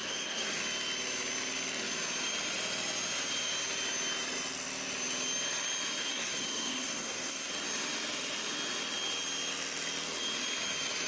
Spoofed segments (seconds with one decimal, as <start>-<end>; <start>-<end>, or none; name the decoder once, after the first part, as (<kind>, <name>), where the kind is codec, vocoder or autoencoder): 0.0-0.6 (codec, SNAC); 6.0-7.5